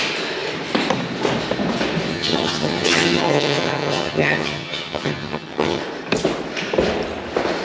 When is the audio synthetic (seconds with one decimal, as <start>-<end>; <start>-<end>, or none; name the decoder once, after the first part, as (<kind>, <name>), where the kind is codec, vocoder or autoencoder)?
2.1-5.8 (vocoder, HiFi-GAN)